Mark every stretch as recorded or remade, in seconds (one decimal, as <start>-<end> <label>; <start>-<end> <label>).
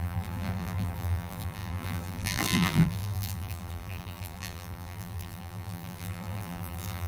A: 0.0-7.1 remade